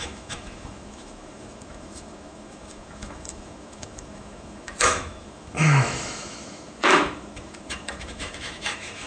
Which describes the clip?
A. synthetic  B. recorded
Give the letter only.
A